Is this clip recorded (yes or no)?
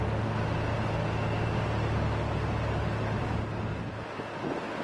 yes